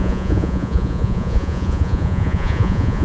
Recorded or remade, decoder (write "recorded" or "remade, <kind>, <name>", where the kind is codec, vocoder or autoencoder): remade, vocoder, Vocos